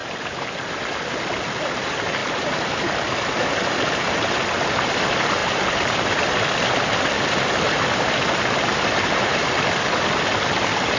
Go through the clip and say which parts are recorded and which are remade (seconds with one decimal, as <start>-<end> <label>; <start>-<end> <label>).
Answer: 0.0-1.3 remade; 1.3-11.0 recorded

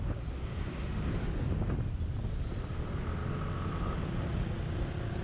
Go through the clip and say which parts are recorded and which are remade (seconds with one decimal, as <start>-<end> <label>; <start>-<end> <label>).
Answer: 0.0-5.2 recorded

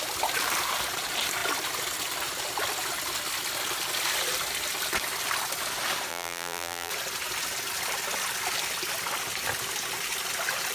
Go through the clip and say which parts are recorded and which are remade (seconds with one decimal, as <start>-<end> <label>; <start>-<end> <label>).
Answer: 0.0-6.1 recorded; 6.1-6.9 remade; 6.9-10.7 recorded

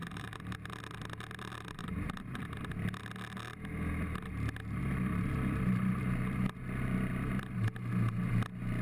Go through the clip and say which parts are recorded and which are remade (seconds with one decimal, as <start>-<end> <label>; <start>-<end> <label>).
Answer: 0.0-0.7 remade; 0.7-1.8 recorded; 1.8-2.7 remade; 2.7-8.8 recorded

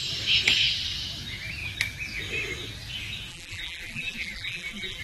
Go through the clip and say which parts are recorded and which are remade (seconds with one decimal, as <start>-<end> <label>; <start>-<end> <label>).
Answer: 0.0-3.3 recorded; 3.3-5.0 remade